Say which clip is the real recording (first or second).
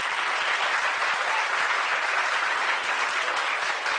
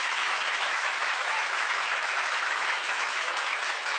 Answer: first